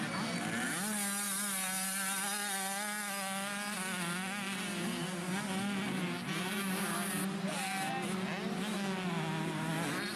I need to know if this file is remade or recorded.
recorded